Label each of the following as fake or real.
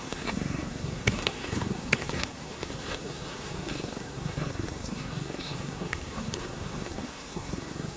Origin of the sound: fake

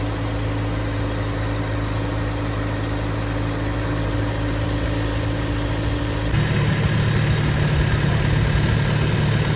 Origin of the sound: real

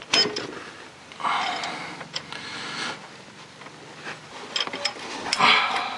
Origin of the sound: real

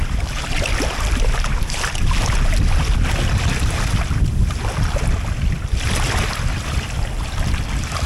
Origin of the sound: real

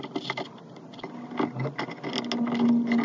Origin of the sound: real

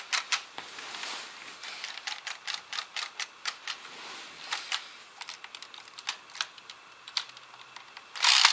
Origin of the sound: real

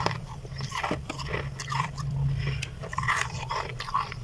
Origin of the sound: fake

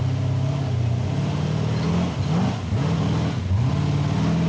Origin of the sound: real